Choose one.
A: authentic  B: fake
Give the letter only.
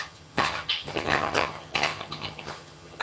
B